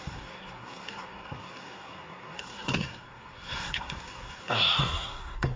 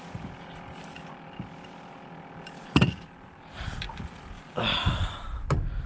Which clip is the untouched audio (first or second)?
second